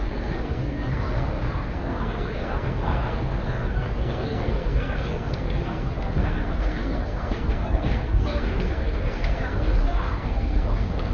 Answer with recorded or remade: remade